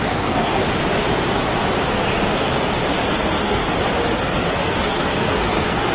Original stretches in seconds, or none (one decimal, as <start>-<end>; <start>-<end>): 0.6-3.1; 3.6-4.2